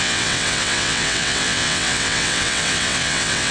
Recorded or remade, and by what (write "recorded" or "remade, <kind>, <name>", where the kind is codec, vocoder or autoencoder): remade, vocoder, WaveNeXt